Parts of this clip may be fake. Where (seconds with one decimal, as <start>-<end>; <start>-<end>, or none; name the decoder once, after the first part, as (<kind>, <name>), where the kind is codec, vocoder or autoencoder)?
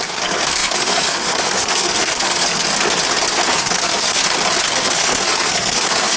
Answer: 0.0-2.7 (codec, SNAC); 3.5-4.2; 4.7-6.2